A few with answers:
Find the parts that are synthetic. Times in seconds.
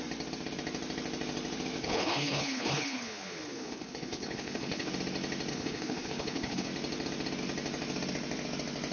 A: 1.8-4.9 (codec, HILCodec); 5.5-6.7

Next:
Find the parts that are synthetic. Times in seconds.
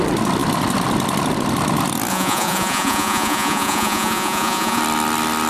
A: 2.1-4.8 (vocoder, Vocos)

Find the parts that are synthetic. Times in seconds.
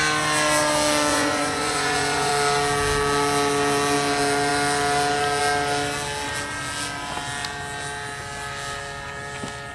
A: 1.1-2.3 (vocoder, Vocos)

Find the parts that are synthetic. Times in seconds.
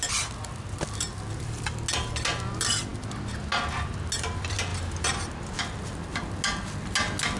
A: 4.7-5.3 (vocoder, BigVGAN v2)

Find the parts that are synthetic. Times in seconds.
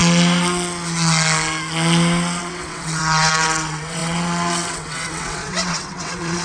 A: 2.4-6.4 (vocoder, WaveNeXt)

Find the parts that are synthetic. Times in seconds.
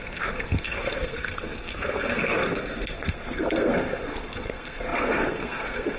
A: 0.0-6.0 (codec, SNAC)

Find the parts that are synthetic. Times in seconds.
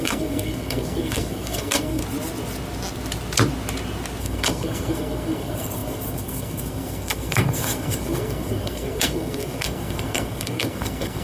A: 0.0-2.0 (codec, SNAC); 4.2-11.2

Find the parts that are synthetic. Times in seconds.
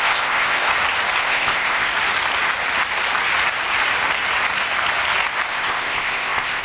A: 0.0-0.7 (codec, ZipCodec); 1.2-1.9; 5.5-6.6